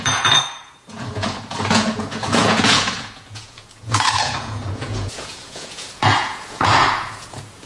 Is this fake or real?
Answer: fake